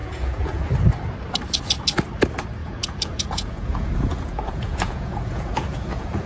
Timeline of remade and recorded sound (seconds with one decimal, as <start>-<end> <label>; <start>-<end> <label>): 0.0-0.7 remade; 0.7-2.6 recorded; 2.6-6.3 remade